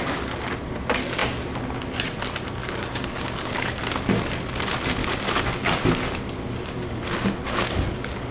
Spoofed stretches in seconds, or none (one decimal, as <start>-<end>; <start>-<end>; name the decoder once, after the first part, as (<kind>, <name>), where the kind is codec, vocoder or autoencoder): 2.6-3.7 (codec, DAC); 5.0-8.3